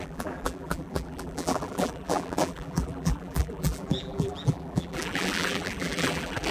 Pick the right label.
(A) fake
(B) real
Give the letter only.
A